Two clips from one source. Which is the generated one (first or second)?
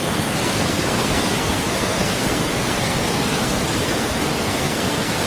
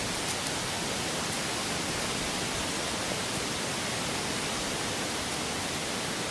first